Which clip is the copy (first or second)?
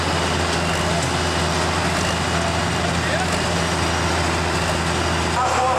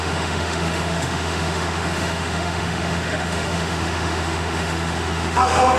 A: second